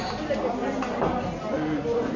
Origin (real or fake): real